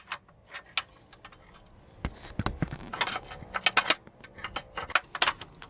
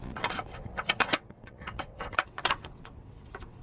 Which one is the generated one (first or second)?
second